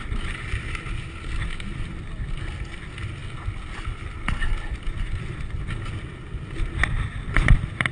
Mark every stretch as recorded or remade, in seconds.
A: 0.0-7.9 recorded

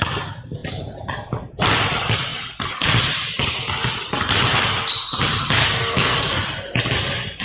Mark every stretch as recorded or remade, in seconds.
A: 0.0-5.6 recorded; 5.6-6.3 remade; 6.3-7.4 recorded

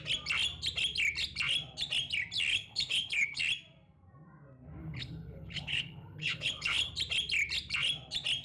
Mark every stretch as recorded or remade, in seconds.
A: 0.0-2.5 recorded; 2.5-3.4 remade; 3.4-4.8 recorded; 4.8-6.9 remade; 6.9-8.4 recorded

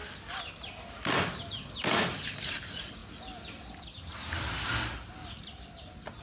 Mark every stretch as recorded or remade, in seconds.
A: 0.0-6.2 recorded

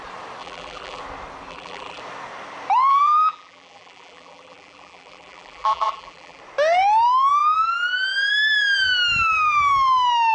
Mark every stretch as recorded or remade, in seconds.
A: 0.0-0.4 recorded; 0.4-1.0 remade; 1.0-1.5 recorded; 1.5-2.0 remade; 2.0-2.9 recorded; 2.9-6.4 remade; 6.4-10.3 recorded